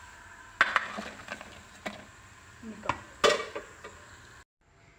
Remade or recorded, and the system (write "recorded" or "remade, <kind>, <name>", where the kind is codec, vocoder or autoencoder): recorded